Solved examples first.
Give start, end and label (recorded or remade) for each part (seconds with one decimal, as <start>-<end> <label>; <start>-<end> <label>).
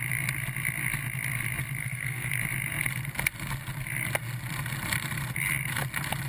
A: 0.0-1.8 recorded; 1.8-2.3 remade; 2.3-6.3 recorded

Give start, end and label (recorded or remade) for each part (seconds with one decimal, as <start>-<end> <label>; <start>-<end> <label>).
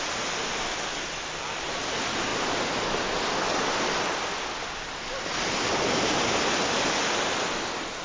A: 0.0-8.0 recorded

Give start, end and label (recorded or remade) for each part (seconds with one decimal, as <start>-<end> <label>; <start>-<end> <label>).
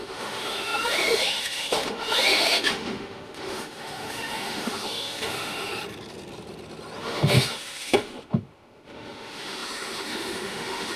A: 0.0-5.7 remade; 5.7-7.0 recorded; 7.0-11.0 remade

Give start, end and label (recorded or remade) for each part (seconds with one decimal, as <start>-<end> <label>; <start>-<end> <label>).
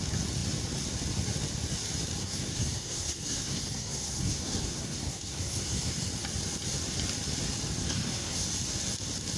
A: 0.0-2.2 recorded; 2.2-6.1 remade; 6.1-7.8 recorded; 7.8-8.5 remade; 8.5-9.4 recorded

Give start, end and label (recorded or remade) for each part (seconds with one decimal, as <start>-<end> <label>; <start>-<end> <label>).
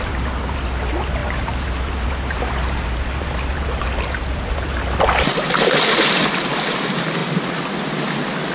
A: 0.0-1.2 recorded; 1.2-1.8 remade; 1.8-3.5 recorded; 3.5-5.5 remade; 5.5-8.5 recorded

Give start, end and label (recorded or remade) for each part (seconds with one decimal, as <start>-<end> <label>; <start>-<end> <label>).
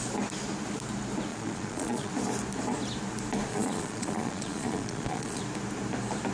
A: 0.0-1.3 recorded; 1.3-2.1 remade; 2.1-3.5 recorded; 3.5-5.4 remade; 5.4-6.3 recorded